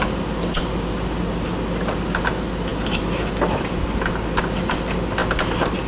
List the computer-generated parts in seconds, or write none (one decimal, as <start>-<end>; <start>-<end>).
none